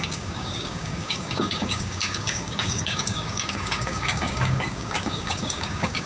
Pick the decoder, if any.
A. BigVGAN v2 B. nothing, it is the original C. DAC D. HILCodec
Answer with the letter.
C